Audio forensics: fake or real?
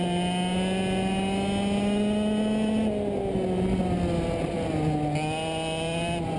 real